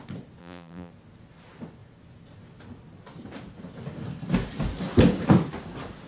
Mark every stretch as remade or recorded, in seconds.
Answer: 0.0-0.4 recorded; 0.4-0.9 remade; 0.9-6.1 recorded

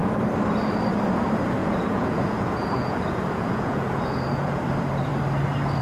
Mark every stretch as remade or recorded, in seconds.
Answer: 0.0-1.6 recorded; 1.6-4.6 remade; 4.6-5.8 recorded

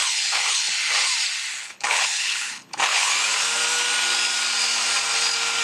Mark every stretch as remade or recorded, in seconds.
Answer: 0.0-0.7 remade; 0.7-1.6 recorded; 1.6-3.1 remade; 3.1-5.6 recorded

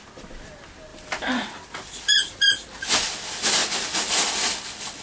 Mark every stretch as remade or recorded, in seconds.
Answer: 0.0-0.9 recorded; 0.9-2.9 remade; 2.9-5.0 recorded

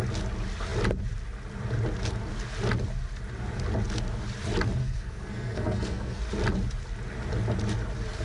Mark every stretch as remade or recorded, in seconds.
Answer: 0.0-4.8 recorded; 4.8-6.2 remade; 6.2-8.2 recorded

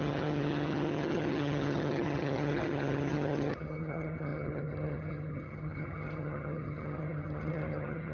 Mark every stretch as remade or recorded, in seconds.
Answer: 0.0-8.1 remade

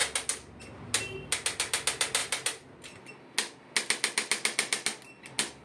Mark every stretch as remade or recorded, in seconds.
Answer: 0.0-2.2 recorded; 2.2-3.1 remade; 3.1-5.6 recorded

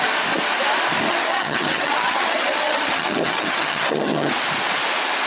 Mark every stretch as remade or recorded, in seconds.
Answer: 0.0-1.1 recorded; 1.1-4.3 remade; 4.3-5.3 recorded